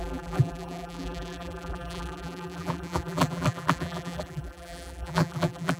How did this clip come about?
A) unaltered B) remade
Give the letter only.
B